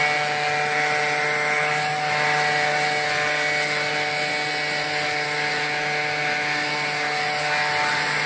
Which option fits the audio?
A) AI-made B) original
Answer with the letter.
B